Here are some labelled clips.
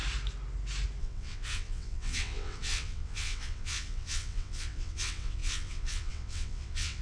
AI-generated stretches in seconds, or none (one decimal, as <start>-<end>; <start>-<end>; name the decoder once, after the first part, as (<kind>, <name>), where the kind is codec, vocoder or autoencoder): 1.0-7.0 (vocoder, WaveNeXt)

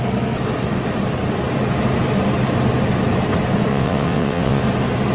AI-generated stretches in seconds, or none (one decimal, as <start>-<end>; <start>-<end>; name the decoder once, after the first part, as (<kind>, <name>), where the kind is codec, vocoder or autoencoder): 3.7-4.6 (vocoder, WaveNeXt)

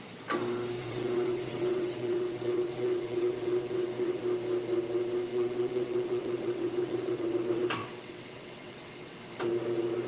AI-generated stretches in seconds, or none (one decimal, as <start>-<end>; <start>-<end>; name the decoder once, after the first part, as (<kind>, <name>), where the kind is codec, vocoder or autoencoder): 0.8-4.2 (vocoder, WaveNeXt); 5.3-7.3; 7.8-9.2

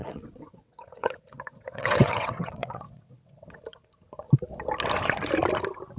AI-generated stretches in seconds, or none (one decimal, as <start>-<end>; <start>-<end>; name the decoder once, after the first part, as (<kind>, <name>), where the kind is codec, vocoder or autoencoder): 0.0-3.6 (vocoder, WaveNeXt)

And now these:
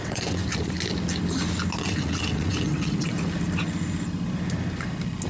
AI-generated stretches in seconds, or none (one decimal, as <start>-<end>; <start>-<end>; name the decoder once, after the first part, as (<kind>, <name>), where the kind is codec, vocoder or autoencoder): 0.0-0.4 (vocoder, WaveNeXt); 1.8-3.1

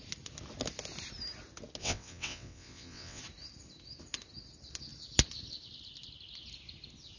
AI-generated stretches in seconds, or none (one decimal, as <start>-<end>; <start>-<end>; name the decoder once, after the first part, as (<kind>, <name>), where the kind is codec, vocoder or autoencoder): 1.8-3.2 (vocoder, WaveNeXt)